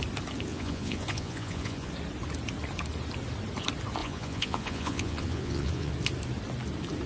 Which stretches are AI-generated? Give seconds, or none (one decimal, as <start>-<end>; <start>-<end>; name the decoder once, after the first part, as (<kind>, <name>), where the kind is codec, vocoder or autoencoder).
0.5-1.9 (vocoder, Vocos); 4.0-5.9